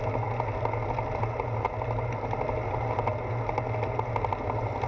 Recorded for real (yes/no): yes